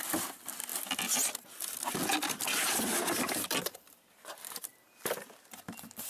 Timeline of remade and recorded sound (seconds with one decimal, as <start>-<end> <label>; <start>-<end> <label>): 0.0-0.7 remade; 0.7-3.9 recorded; 3.9-6.1 remade